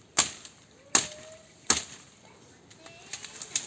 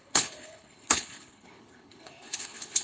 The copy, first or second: second